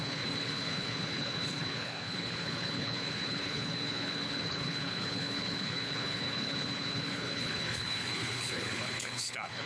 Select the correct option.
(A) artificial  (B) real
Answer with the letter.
A